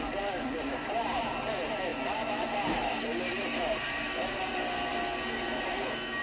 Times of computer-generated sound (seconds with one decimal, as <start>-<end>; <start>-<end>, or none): none